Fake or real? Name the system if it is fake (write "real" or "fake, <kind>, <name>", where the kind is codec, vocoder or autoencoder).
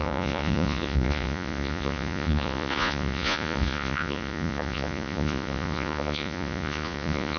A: fake, vocoder, Vocos